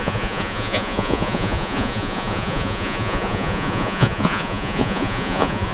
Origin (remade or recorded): remade